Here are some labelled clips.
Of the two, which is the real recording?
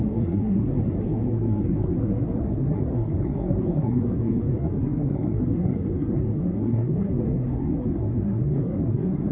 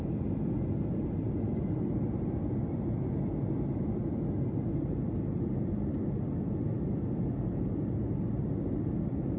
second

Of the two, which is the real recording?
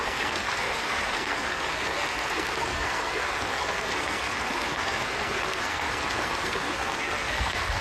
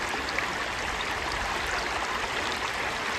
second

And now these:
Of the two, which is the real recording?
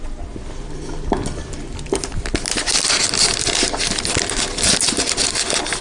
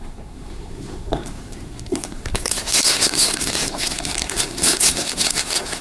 first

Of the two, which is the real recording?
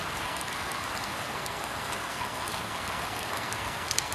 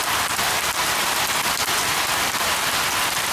second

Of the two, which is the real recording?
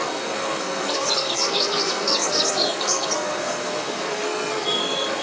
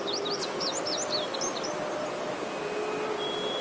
second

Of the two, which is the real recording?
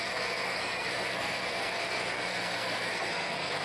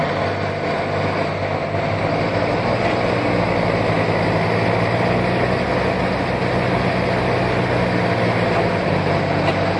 second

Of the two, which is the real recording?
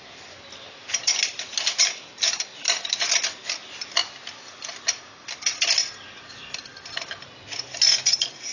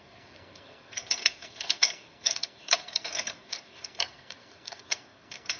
first